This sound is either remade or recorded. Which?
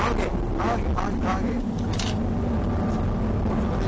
recorded